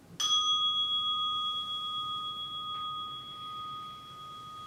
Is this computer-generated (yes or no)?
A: no